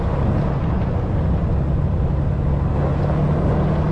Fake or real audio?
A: real